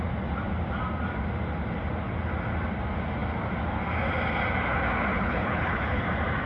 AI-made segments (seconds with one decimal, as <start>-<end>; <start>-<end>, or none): 5.1-6.0